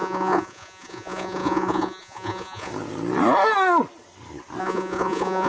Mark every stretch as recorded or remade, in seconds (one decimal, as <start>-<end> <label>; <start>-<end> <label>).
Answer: 0.0-2.7 remade; 2.7-4.6 recorded; 4.6-5.5 remade